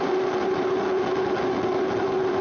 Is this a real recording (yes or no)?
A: yes